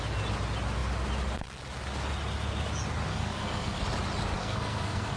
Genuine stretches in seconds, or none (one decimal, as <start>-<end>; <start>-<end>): 0.0-3.1; 3.8-4.4